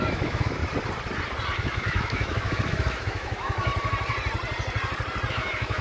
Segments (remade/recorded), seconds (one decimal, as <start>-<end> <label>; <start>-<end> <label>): 0.0-0.6 remade; 0.6-1.6 recorded; 1.6-3.7 remade; 3.7-5.3 recorded; 5.3-5.8 remade